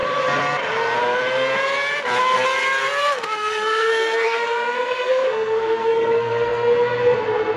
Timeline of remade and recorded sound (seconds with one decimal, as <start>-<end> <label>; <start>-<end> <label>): 0.0-3.0 recorded; 3.0-7.6 remade